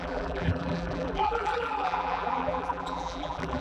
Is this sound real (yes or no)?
no